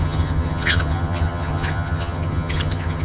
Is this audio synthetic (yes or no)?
yes